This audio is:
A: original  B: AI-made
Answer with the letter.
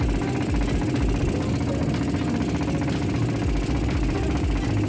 A